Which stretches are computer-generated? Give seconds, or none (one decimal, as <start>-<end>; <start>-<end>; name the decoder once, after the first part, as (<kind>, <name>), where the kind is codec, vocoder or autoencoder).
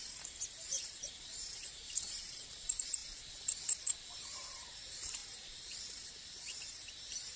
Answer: 0.0-7.4 (vocoder, BigVGAN v2)